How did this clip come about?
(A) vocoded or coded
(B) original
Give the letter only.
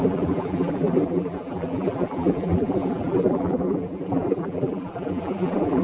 A